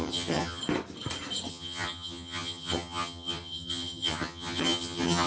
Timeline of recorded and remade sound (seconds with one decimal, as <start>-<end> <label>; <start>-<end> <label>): 0.0-0.6 remade; 0.6-1.5 recorded; 1.5-5.3 remade